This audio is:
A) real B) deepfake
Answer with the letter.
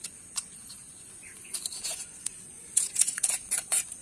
B